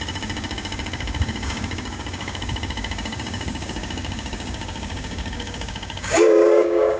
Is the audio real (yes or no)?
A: no